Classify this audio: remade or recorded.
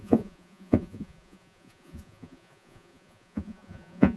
remade